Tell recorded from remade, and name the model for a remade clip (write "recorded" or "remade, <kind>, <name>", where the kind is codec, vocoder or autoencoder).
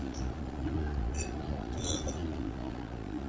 remade, vocoder, Vocos